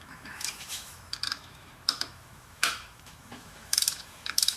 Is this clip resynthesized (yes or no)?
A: yes